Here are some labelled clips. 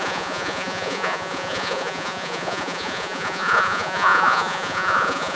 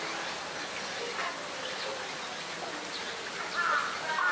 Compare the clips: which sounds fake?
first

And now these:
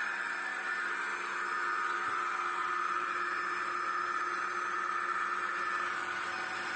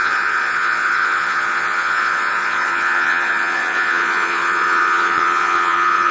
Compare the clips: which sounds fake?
second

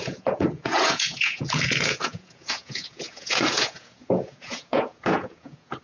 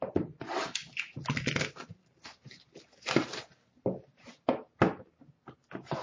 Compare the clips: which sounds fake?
first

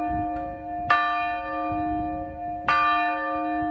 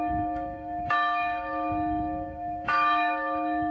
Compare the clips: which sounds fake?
second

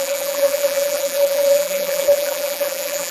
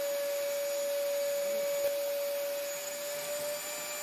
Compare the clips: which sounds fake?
first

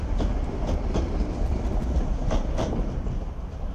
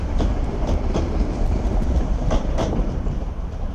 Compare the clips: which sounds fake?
second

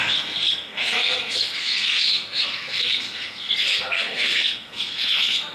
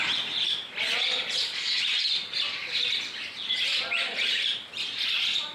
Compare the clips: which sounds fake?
first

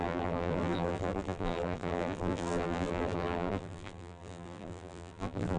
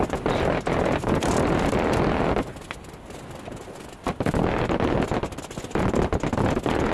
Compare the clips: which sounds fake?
first